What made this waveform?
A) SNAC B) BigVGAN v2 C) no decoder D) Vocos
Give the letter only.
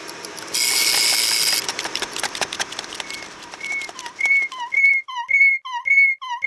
B